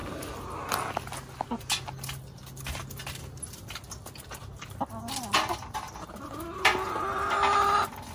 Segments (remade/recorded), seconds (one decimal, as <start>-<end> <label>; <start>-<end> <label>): 0.0-8.1 recorded